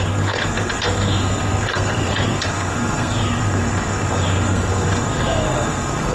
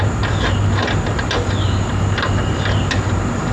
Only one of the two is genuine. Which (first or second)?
second